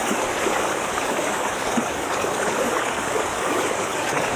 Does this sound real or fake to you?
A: fake